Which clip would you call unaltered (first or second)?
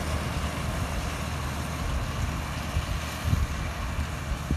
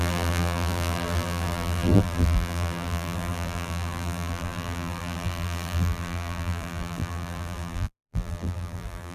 first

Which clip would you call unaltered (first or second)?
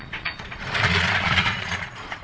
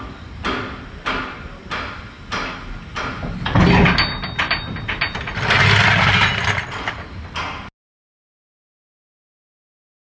second